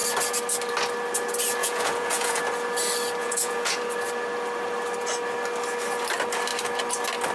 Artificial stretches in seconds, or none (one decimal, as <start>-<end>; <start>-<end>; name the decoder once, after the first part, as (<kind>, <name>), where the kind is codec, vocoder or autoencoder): 1.6-2.4 (vocoder, Vocos); 3.2-3.8